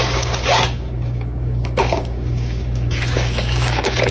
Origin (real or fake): fake